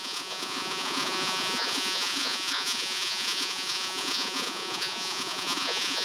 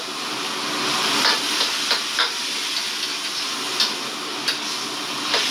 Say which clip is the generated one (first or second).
first